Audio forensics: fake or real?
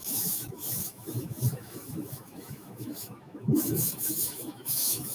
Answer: fake